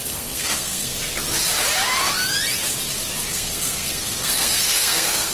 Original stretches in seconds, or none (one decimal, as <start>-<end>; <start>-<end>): 0.9-3.3